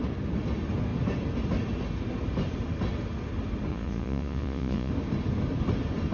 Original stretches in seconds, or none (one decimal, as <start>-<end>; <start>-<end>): 0.0-3.7; 4.9-6.1